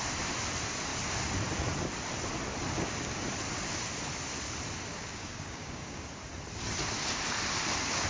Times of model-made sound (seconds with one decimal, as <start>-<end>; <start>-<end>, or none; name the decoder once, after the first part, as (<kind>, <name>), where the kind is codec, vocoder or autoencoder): 4.9-6.1 (codec, DAC)